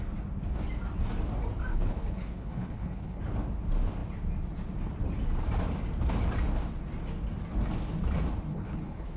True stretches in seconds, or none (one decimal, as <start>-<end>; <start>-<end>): 0.0-1.7; 3.2-8.5